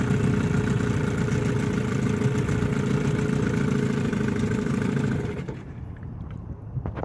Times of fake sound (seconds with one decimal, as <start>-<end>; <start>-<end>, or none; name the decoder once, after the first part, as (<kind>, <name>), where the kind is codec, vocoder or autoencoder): 4.1-7.0 (vocoder, BigVGAN v2)